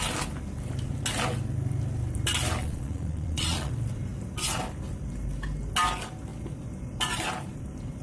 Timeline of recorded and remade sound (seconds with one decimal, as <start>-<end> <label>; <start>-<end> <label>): 0.0-2.6 recorded; 2.6-3.7 remade; 3.7-8.0 recorded